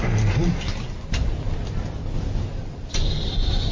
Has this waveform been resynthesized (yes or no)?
no